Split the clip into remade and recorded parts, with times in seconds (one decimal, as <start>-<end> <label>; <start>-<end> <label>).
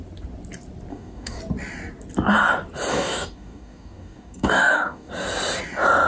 0.0-0.9 recorded; 0.9-1.4 remade; 1.4-2.9 recorded; 2.9-5.1 remade; 5.1-6.1 recorded